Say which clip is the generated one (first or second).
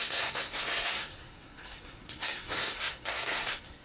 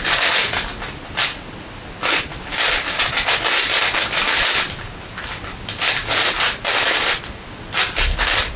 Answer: first